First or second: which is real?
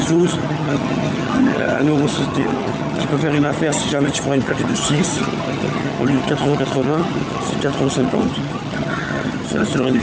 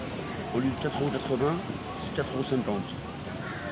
second